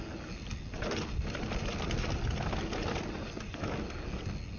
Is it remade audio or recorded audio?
recorded